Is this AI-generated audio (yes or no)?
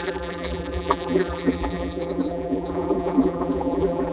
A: yes